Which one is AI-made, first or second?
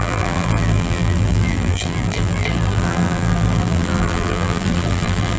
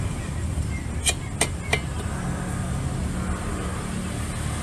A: first